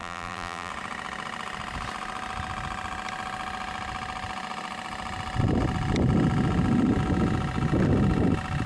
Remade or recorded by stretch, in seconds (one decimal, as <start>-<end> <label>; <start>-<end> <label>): 0.0-0.7 remade; 0.7-8.7 recorded